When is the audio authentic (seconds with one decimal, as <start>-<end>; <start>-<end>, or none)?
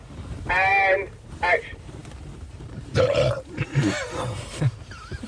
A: 0.7-1.3